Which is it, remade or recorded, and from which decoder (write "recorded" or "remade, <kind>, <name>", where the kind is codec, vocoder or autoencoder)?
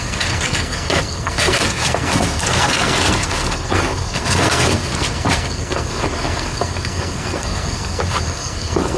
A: remade, codec, SNAC